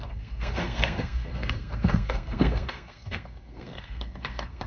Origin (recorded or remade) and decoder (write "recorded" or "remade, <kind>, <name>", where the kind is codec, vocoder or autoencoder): remade, codec, SNAC